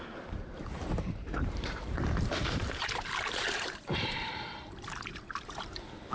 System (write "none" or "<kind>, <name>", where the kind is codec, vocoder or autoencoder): vocoder, BigVGAN v2